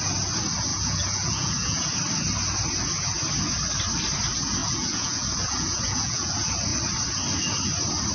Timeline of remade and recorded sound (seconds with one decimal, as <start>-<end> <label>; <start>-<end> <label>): 0.0-0.7 recorded; 0.7-1.9 remade; 1.9-4.6 recorded; 4.6-6.3 remade; 6.3-8.1 recorded